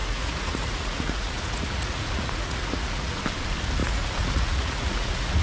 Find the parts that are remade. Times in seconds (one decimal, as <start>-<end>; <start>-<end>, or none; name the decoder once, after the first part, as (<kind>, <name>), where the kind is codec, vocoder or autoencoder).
0.0-3.2 (vocoder, Vocos); 3.8-5.4